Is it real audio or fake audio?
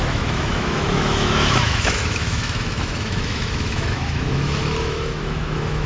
fake